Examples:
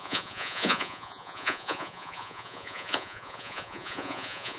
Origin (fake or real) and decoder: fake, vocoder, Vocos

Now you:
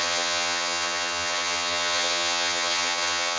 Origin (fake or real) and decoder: fake, vocoder, HiFi-GAN